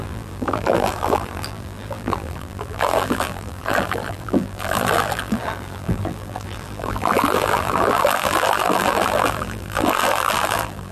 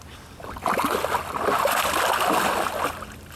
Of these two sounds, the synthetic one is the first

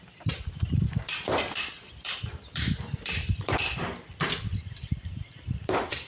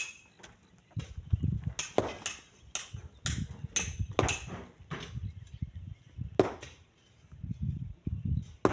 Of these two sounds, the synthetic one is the first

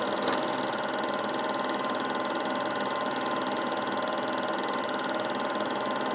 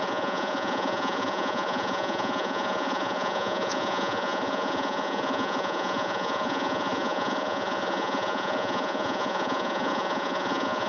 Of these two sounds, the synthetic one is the second